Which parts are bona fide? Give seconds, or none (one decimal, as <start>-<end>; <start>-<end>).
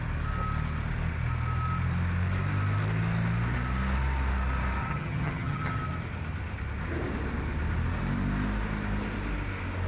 0.0-4.8; 5.8-9.9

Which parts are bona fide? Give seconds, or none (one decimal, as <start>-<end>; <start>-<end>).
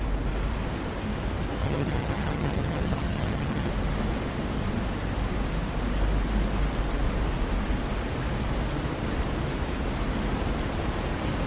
0.0-1.6; 3.7-11.5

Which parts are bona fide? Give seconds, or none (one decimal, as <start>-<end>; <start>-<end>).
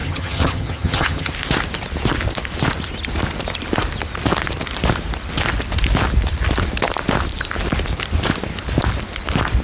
1.3-9.6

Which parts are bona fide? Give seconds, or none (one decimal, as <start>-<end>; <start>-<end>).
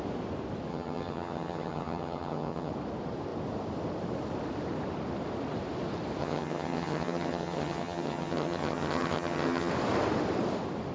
0.0-0.7; 2.7-6.2; 9.7-10.9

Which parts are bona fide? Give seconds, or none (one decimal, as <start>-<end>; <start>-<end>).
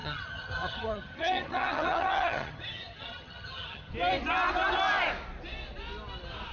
3.9-6.5